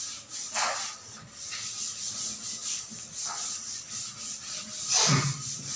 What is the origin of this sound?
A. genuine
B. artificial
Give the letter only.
A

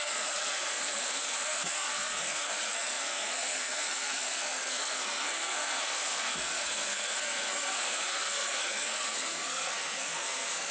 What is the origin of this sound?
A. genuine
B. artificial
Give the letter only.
B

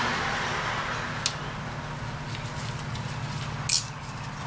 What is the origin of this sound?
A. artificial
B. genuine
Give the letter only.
B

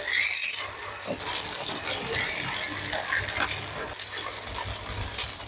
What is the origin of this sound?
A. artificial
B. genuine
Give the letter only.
B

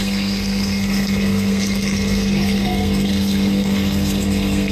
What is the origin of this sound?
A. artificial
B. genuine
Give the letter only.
A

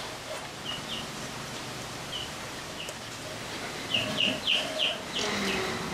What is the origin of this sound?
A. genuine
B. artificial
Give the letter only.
B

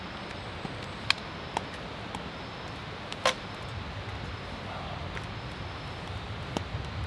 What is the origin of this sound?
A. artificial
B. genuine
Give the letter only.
B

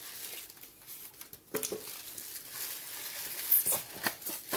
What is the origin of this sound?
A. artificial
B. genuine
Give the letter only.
B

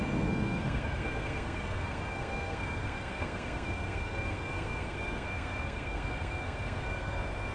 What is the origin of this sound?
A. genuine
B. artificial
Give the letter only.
B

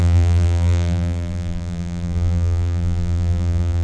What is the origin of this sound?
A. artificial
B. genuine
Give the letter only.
A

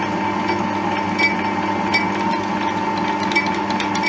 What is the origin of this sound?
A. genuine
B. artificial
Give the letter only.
A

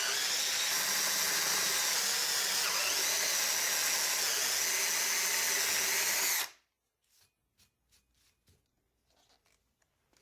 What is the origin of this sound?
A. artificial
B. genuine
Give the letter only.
B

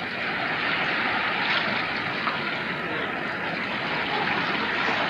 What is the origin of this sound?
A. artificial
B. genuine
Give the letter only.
B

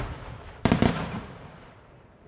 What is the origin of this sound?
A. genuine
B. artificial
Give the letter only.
B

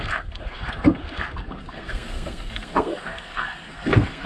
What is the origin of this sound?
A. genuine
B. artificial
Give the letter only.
B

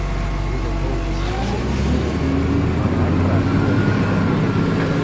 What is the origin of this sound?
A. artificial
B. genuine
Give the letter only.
B